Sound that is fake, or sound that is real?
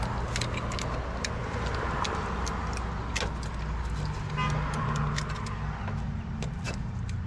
real